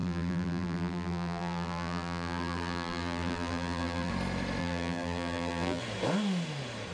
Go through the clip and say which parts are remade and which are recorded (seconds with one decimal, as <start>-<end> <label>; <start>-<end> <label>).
0.0-4.1 remade; 4.1-4.6 recorded; 4.6-5.8 remade; 5.8-6.9 recorded